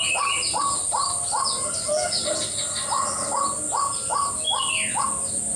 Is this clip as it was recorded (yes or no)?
yes